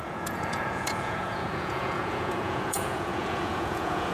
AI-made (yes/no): yes